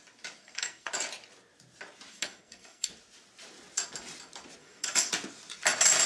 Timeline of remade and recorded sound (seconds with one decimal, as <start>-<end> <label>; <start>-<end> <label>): 0.0-0.4 recorded; 0.4-0.9 remade; 0.9-2.1 recorded; 2.1-2.9 remade; 2.9-4.6 recorded; 4.6-5.1 remade; 5.1-6.1 recorded